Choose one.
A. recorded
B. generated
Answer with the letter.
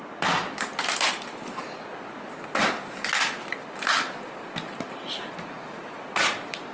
A